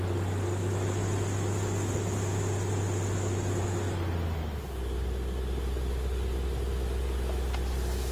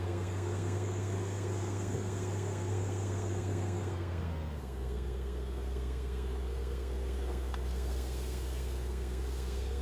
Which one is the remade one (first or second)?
second